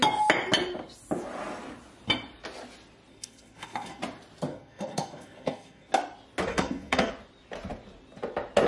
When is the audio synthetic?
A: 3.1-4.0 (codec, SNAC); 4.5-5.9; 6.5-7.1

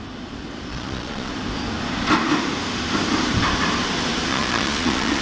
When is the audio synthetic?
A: 0.7-1.3 (vocoder, Vocos); 4.3-5.2

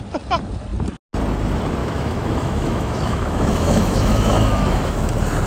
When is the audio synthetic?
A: 1.8-5.1 (autoencoder, DAC-VAE)